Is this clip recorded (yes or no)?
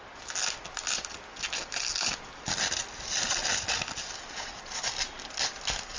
yes